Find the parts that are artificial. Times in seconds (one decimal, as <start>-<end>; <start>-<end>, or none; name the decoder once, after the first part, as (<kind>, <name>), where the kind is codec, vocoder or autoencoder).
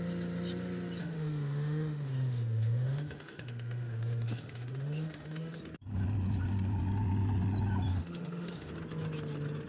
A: 1.0-5.6 (autoencoder, DAC-VAE); 7.9-8.7